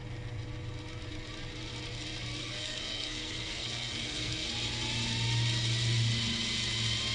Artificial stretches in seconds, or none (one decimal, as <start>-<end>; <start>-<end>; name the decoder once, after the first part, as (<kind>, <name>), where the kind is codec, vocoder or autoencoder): 2.4-4.5 (codec, SNAC)